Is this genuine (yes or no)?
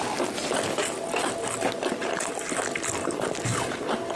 yes